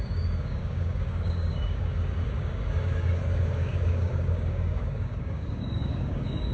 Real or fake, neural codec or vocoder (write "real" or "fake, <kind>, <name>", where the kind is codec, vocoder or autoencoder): fake, codec, DAC